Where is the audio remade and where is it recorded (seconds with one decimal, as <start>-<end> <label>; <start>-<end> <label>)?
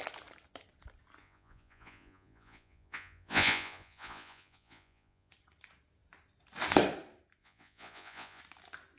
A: 0.0-1.2 recorded; 1.2-5.3 remade; 5.3-7.4 recorded; 7.4-8.4 remade; 8.4-9.0 recorded